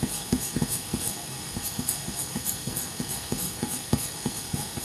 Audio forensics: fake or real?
fake